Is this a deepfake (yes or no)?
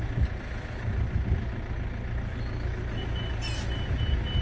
no